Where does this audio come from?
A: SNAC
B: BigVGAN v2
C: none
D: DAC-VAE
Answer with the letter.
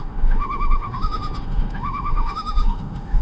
D